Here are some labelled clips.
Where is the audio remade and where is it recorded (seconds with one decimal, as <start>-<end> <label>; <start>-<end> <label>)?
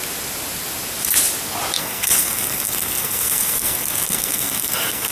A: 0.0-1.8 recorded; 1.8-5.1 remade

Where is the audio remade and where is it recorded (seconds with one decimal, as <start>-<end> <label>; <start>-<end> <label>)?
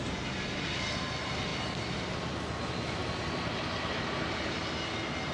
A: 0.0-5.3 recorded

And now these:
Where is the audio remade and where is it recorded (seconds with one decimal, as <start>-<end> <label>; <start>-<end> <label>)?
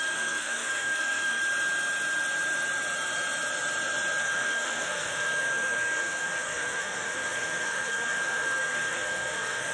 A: 0.0-1.4 remade; 1.4-4.2 recorded; 4.2-9.7 remade